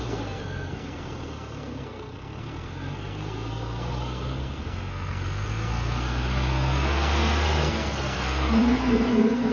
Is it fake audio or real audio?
fake